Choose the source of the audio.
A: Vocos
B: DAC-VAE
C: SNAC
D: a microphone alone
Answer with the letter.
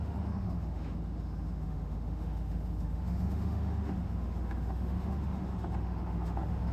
B